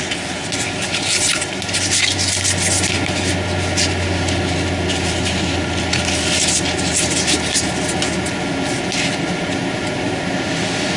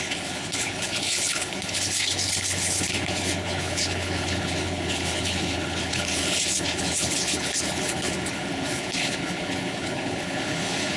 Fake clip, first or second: second